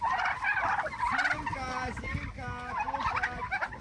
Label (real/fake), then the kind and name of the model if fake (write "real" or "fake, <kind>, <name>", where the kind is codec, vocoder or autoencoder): real